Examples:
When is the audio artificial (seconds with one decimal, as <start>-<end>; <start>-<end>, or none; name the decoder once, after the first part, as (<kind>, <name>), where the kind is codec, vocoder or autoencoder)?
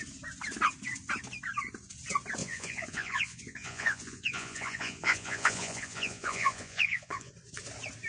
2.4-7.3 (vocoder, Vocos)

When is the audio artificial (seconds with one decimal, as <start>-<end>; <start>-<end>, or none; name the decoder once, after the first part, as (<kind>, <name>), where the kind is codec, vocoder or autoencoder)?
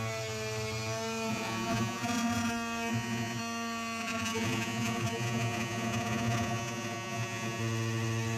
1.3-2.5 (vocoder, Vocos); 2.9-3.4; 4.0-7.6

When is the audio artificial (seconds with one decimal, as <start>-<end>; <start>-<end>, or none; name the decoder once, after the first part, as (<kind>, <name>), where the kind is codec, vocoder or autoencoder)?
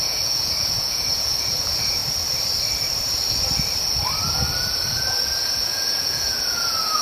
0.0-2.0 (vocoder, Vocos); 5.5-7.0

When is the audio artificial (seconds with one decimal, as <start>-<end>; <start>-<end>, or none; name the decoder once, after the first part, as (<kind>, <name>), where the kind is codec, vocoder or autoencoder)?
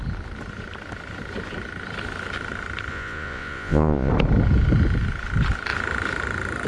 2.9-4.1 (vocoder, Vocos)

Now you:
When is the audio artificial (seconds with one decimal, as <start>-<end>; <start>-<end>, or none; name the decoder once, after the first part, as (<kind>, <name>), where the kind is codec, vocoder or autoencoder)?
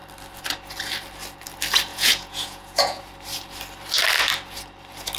1.9-3.0 (vocoder, Vocos)